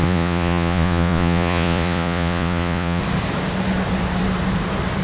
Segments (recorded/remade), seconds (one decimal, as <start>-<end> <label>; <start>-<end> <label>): 0.0-3.0 remade; 3.0-5.0 recorded